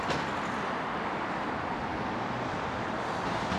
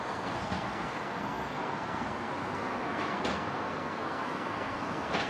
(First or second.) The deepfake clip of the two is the second